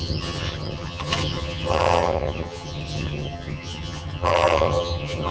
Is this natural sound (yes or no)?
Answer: no